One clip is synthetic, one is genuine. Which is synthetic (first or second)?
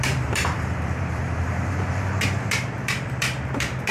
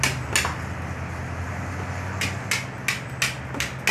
first